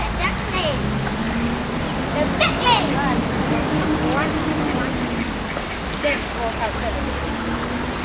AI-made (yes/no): no